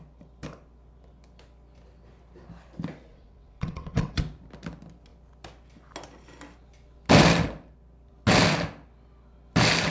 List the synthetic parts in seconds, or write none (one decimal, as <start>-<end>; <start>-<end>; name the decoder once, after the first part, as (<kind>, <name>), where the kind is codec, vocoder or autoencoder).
3.1-4.2 (vocoder, WaveNeXt)